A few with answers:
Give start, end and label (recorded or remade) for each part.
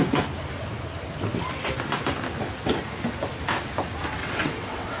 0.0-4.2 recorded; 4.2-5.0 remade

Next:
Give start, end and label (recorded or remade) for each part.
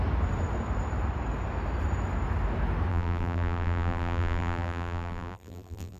0.0-2.9 recorded; 2.9-6.0 remade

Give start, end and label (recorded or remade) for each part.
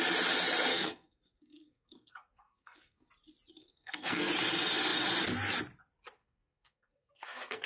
0.0-0.7 recorded; 0.7-3.1 remade; 3.1-3.6 recorded; 3.6-4.3 remade; 4.3-6.2 recorded; 6.2-7.7 remade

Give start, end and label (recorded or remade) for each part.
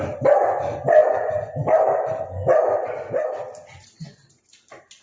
0.0-5.0 recorded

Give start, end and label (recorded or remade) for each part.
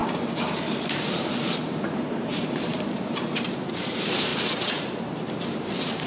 0.0-0.9 recorded; 0.9-6.1 remade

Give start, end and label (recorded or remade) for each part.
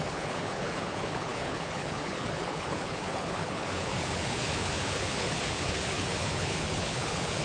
0.0-7.4 remade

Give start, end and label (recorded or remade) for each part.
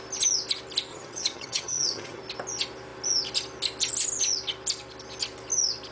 0.0-0.9 recorded; 0.9-2.2 remade; 2.2-5.9 recorded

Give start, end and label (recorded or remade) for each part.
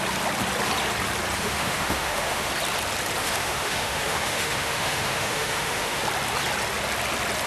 0.0-1.4 recorded; 1.4-2.5 remade; 2.5-3.2 recorded; 3.2-6.0 remade; 6.0-7.5 recorded